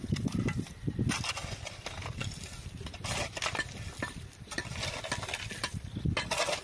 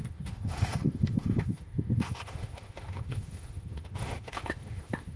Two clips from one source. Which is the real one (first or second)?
first